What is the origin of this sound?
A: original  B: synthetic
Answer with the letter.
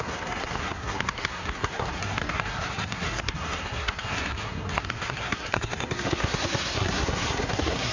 B